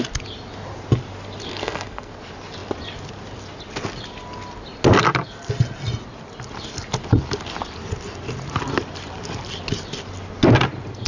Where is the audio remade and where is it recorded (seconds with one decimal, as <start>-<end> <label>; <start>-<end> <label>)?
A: 0.0-1.5 recorded; 1.5-2.1 remade; 2.1-11.1 recorded